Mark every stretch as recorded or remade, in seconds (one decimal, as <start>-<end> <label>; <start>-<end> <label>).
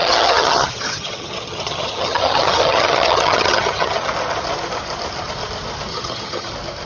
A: 0.0-4.1 remade; 4.1-5.9 recorded; 5.9-6.5 remade; 6.5-6.9 recorded